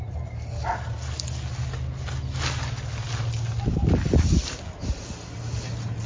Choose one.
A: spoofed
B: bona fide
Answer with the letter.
B